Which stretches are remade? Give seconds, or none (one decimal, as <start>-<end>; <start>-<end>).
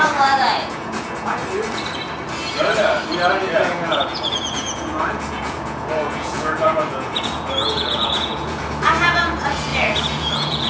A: 0.0-1.4; 3.6-10.7